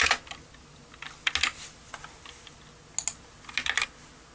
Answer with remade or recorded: recorded